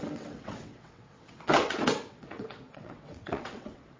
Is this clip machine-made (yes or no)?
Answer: yes